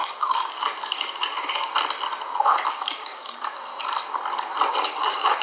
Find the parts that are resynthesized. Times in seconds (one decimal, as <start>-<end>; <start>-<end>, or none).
0.0-1.7; 2.7-3.7; 4.7-5.4